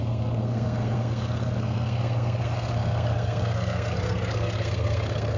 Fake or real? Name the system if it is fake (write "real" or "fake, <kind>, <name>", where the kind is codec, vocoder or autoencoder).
fake, codec, SNAC